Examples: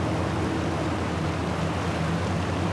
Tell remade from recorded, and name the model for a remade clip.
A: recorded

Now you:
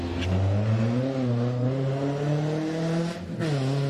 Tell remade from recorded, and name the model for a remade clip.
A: recorded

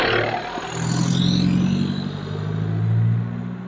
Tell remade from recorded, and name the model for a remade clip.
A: recorded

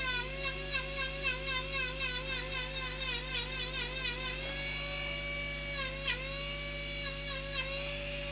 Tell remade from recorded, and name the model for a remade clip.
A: recorded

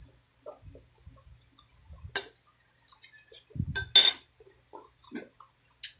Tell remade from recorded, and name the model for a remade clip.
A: recorded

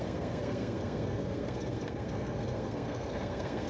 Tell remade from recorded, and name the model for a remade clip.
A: remade, codec, SNAC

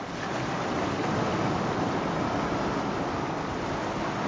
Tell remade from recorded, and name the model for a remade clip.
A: recorded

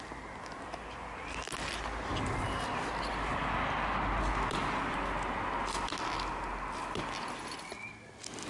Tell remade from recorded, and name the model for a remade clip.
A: recorded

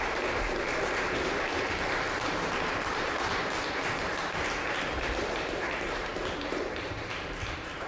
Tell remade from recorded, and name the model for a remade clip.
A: remade, vocoder, BigVGAN v2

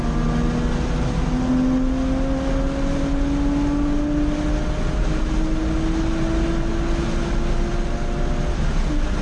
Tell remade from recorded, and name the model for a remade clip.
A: recorded